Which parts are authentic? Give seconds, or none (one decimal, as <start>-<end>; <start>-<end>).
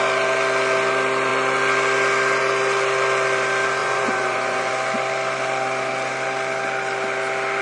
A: 0.0-3.8; 4.7-7.6